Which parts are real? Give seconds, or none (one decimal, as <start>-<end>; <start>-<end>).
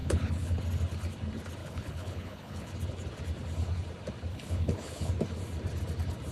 0.6-1.6; 2.7-4.3; 5.1-6.3